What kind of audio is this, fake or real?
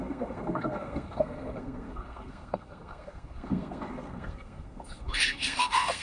fake